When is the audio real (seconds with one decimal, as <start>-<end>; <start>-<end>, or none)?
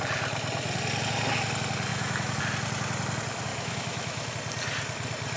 0.0-1.9; 2.4-3.5; 4.3-5.4